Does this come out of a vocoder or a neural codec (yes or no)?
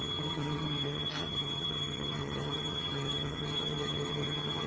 yes